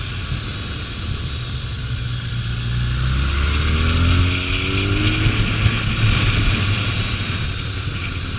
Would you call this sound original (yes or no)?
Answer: yes